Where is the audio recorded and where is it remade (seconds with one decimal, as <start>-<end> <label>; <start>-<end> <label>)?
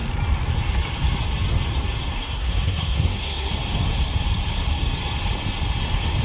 0.0-2.1 recorded; 2.1-3.5 remade; 3.5-6.2 recorded